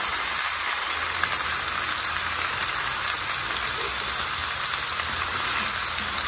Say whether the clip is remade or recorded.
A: recorded